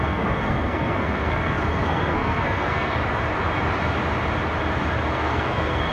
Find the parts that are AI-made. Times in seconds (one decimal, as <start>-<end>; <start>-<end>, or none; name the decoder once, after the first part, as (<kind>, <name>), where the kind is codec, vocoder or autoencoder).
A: 0.0-3.0 (codec, SNAC); 5.1-5.9